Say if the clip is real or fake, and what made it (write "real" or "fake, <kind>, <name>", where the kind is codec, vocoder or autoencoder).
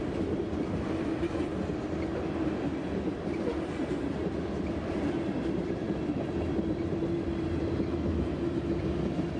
real